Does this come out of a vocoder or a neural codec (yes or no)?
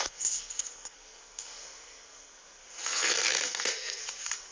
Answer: yes